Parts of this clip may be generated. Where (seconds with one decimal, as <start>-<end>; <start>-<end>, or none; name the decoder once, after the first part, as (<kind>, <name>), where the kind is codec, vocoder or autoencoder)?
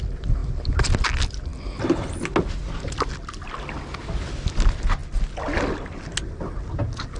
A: none